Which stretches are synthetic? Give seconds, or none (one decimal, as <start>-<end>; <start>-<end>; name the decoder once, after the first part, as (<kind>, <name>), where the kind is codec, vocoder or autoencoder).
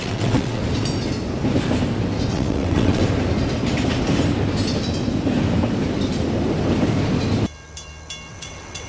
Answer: 0.0-0.6 (vocoder, WaveNeXt); 2.3-3.0; 8.3-8.9